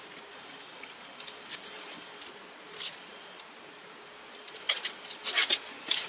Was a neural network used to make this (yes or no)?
no